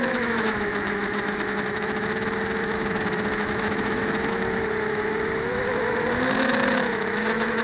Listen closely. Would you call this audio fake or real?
fake